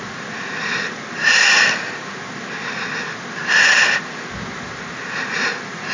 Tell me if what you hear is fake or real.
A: real